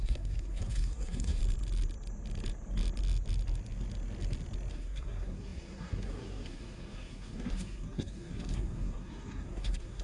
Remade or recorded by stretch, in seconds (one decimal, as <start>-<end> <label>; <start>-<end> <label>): 0.0-1.4 remade; 1.4-4.7 recorded; 4.7-10.0 remade